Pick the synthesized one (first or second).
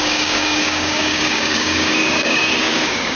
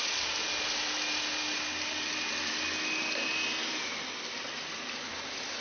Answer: first